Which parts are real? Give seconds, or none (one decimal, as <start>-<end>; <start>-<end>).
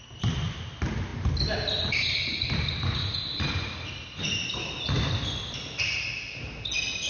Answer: 0.0-7.1